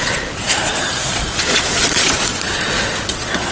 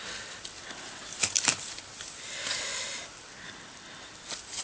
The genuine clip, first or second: second